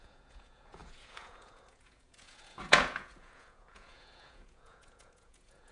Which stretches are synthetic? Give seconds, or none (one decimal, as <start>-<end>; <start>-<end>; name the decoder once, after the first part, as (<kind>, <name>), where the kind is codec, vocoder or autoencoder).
0.0-5.7 (vocoder, Vocos)